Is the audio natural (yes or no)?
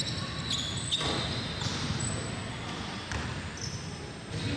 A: yes